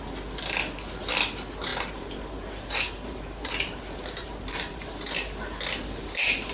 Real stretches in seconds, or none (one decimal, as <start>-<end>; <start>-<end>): 0.0-1.7; 4.9-6.5